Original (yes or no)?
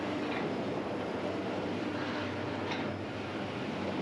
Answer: yes